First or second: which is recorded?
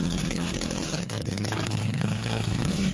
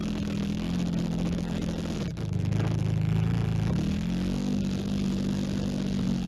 second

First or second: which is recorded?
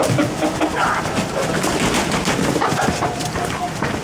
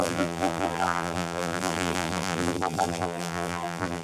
first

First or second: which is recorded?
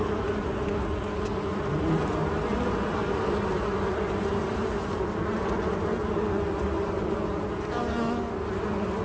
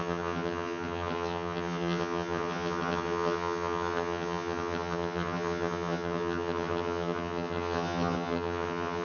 first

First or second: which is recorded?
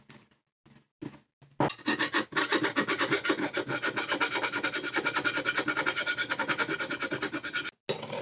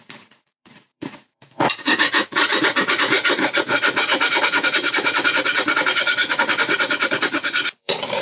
first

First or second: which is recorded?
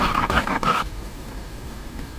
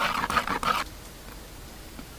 second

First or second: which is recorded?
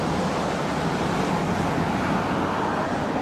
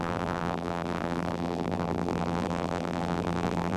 first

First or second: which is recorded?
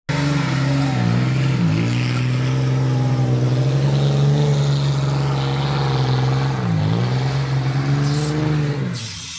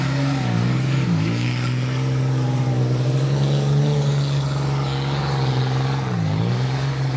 first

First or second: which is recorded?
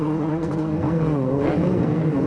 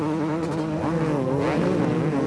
second